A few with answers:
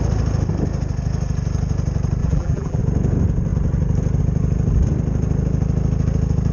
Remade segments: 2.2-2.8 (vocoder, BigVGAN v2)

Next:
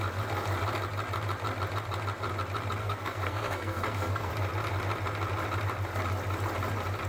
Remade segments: 2.8-4.3 (codec, SNAC)

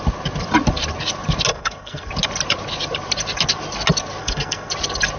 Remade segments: 1.5-2.1 (codec, SNAC); 4.2-4.7

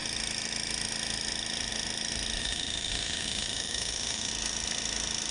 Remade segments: 2.4-4.3 (autoencoder, DAC-VAE)

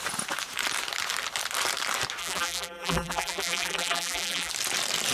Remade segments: 2.2-4.5 (vocoder, BigVGAN v2)

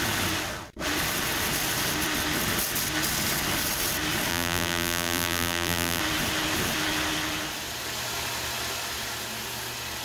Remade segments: 4.3-6.0 (vocoder, BigVGAN v2)

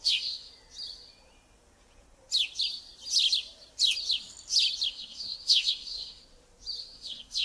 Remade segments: 0.0-0.5 (codec, SNAC); 4.9-6.2; 6.8-7.4

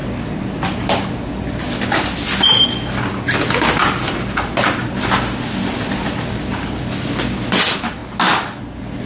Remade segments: none